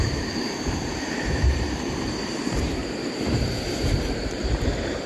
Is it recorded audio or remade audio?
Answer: remade